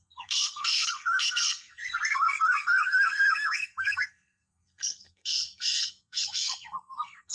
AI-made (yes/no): yes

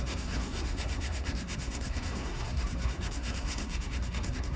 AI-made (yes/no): yes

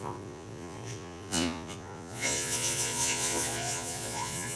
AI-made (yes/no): yes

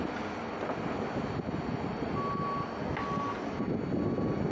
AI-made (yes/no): no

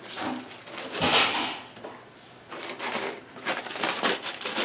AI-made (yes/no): yes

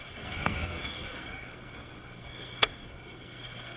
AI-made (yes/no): yes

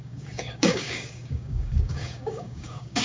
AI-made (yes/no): yes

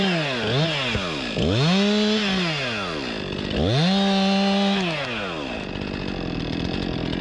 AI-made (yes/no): no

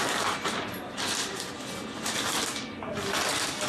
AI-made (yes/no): no